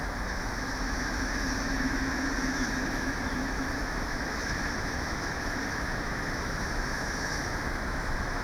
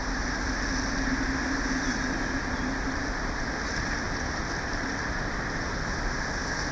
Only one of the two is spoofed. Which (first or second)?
first